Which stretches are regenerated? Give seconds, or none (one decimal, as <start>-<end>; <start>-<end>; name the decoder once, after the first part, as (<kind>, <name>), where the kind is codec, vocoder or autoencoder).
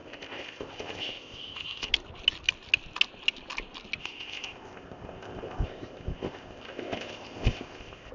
0.0-1.9 (codec, ZipCodec); 4.0-8.1